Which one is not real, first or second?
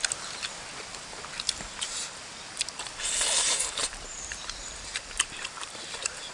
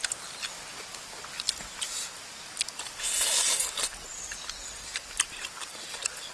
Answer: first